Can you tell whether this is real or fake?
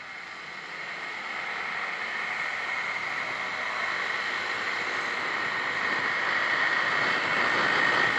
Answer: real